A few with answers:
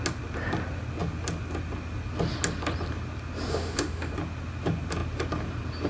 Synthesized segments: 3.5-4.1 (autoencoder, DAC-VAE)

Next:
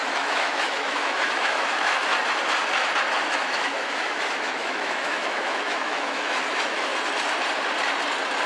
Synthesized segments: 0.0-2.1 (autoencoder, DAC-VAE); 3.3-6.9

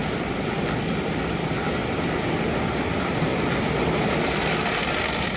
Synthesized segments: 0.0-1.8 (vocoder, BigVGAN v2); 2.5-3.3

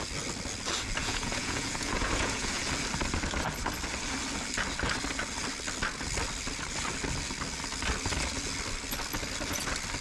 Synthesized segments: 1.0-2.6 (vocoder, Vocos)

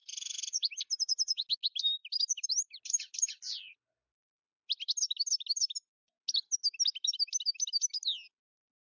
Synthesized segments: 0.0-0.7 (vocoder, Vocos)

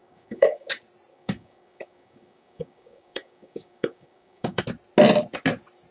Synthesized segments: 0.0-0.7 (codec, DAC); 1.1-4.6